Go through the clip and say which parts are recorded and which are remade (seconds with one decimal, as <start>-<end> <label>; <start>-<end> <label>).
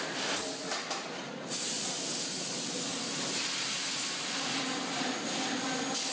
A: 0.0-2.9 recorded; 2.9-3.4 remade; 3.4-6.1 recorded